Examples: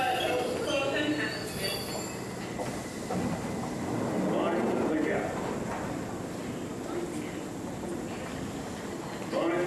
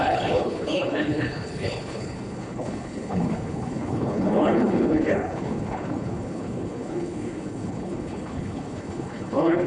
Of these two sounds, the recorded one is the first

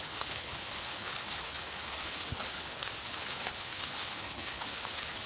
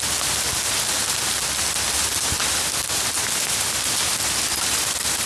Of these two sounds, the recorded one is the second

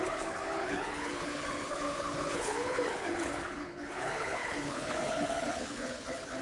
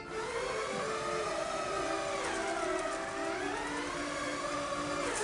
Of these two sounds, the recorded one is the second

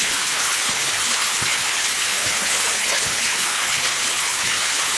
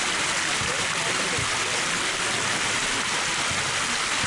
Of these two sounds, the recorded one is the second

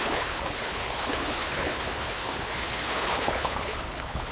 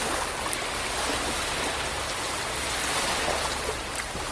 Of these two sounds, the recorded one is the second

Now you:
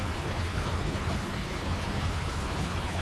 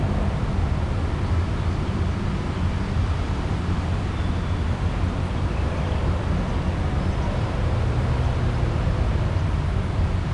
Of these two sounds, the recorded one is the second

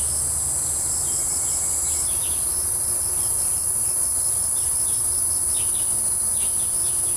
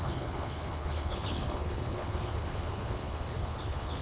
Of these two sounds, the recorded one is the first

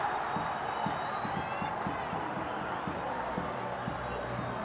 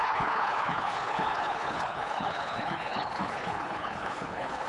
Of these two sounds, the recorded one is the first